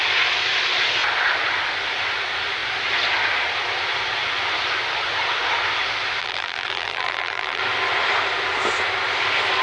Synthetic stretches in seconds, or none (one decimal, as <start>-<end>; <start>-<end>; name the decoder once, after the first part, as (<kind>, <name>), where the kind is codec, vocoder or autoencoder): 6.2-7.6 (vocoder, BigVGAN v2)